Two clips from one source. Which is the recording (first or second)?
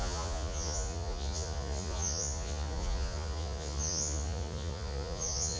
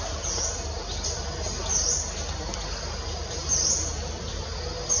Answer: second